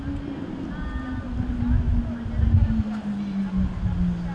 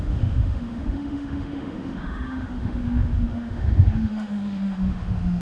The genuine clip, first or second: first